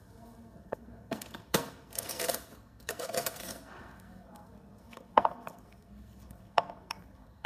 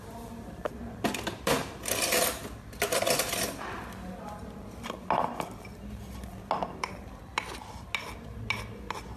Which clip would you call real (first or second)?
second